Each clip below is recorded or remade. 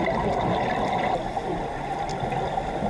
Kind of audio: recorded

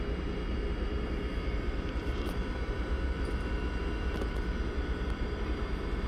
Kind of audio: remade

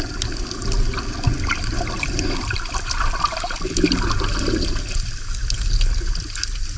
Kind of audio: recorded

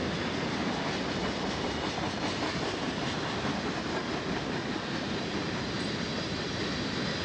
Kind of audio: recorded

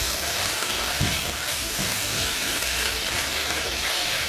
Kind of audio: remade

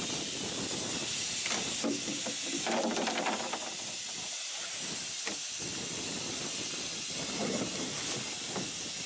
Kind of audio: recorded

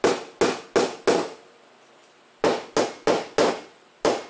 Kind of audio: recorded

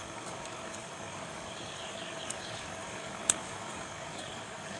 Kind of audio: remade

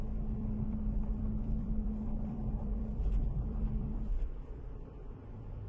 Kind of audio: remade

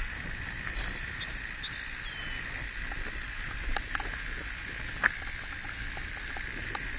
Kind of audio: recorded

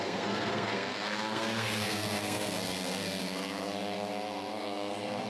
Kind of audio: remade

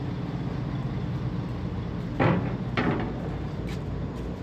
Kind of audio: recorded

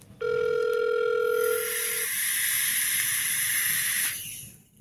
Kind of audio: recorded